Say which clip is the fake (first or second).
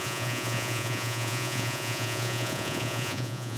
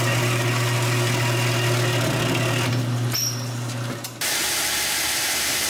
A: first